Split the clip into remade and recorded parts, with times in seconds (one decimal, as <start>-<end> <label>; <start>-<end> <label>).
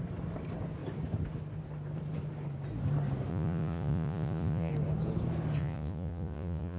0.0-3.3 recorded; 3.3-4.7 remade; 4.7-5.6 recorded; 5.6-6.8 remade